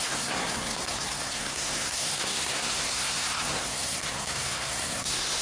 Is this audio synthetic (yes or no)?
yes